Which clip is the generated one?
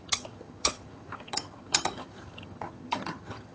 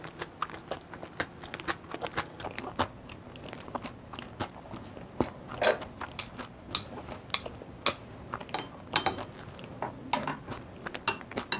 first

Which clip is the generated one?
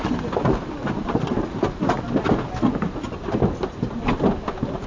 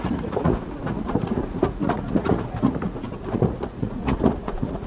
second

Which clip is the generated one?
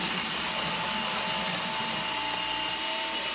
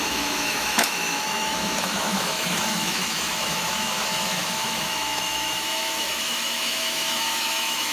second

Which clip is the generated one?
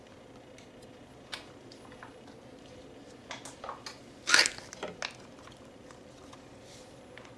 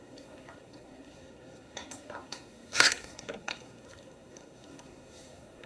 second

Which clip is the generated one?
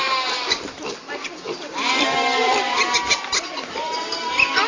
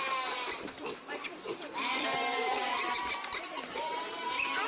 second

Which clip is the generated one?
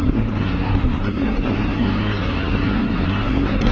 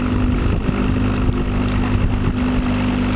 first